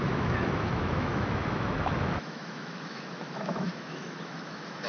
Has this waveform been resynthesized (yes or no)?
yes